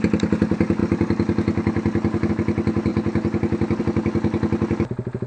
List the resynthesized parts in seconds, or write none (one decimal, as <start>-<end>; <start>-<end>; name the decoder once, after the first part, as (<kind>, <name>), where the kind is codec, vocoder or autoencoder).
none